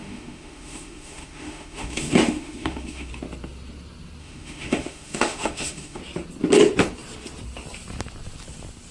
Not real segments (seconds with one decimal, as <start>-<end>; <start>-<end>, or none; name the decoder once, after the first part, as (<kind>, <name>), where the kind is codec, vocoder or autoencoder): 0.0-3.1 (autoencoder, DAC-VAE); 4.2-6.0